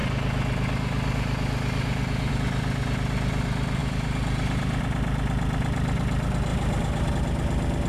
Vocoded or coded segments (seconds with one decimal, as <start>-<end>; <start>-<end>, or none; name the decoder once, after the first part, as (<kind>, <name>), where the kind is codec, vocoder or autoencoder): 6.5-7.1 (vocoder, BigVGAN v2)